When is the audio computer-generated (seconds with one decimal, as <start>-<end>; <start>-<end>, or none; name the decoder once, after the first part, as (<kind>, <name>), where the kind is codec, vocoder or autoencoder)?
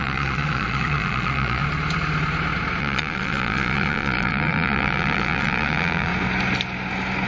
0.0-1.6 (vocoder, Vocos); 2.8-6.1